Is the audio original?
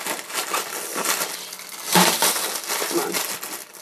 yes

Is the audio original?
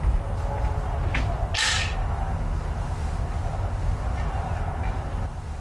yes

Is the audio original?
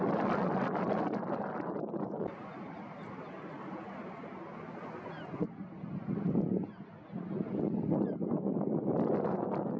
yes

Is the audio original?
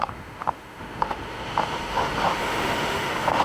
no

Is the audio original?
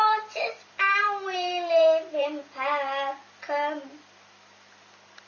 no